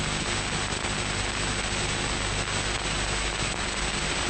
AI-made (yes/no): no